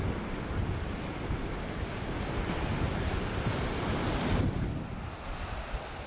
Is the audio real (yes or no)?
yes